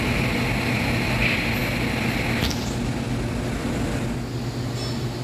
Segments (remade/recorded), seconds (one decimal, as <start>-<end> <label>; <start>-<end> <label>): 0.0-5.2 recorded

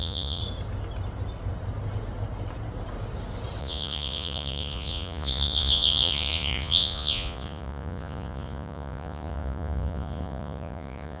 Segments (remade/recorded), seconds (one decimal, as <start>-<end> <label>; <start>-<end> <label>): 0.0-0.4 remade; 0.4-3.6 recorded; 3.6-11.2 remade